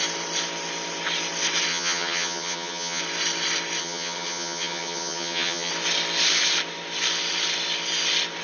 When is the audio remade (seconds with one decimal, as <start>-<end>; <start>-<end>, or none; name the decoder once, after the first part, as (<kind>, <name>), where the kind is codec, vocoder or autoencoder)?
1.7-3.0 (vocoder, HiFi-GAN); 3.8-5.7